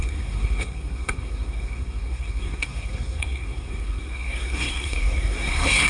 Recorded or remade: remade